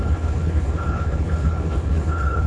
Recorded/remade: remade